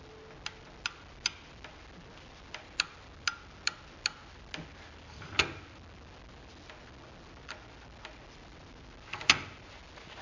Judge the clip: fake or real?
real